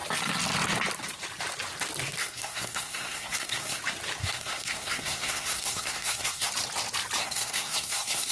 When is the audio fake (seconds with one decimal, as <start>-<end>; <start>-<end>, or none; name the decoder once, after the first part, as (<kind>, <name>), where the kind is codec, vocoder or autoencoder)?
2.2-3.8 (codec, SNAC); 4.2-6.5; 7.2-8.3